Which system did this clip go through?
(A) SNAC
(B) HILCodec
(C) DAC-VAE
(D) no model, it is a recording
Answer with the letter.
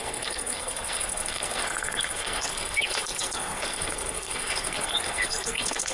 A